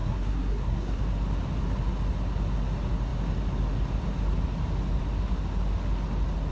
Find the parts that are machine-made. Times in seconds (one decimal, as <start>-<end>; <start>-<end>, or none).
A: 0.0-1.0